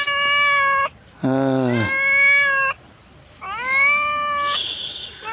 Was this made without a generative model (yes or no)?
yes